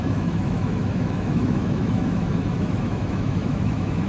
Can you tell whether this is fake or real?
fake